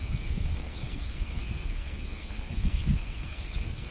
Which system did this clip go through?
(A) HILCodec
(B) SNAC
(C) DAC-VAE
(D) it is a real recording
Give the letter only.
B